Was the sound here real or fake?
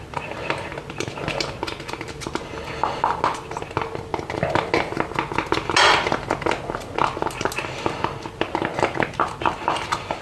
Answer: real